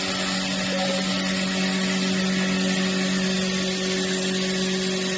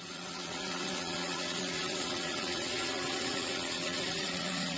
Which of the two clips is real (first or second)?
first